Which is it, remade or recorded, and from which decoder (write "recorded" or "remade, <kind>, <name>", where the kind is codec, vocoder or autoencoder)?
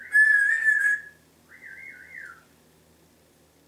recorded